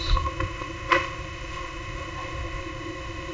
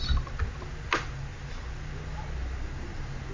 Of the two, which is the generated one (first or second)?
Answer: first